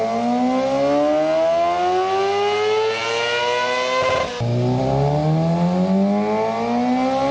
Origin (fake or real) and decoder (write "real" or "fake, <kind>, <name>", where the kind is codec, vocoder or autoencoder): real